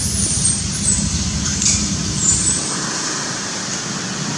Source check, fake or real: real